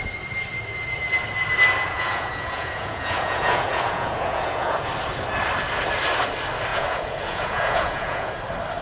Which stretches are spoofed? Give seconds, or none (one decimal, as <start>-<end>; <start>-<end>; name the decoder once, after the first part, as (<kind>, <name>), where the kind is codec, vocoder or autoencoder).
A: 1.8-4.9 (vocoder, Vocos); 6.7-8.3